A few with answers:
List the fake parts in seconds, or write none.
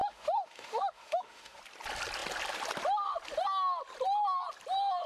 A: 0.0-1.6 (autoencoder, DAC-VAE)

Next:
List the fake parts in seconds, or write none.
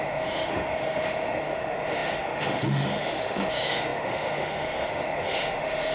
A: 0.0-5.9 (autoencoder, DAC-VAE)